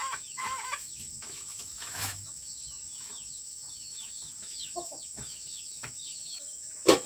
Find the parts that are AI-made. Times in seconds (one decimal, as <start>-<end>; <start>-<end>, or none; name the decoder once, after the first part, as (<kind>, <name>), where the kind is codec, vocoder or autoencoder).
0.0-7.1 (autoencoder, DAC-VAE)